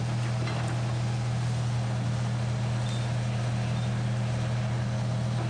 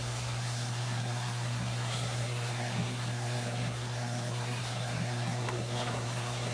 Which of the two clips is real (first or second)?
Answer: first